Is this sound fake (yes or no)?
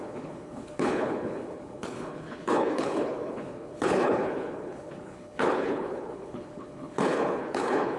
yes